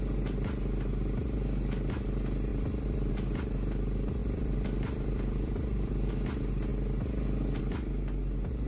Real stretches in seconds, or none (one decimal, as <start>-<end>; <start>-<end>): 0.0-2.5; 3.1-4.2; 6.1-8.7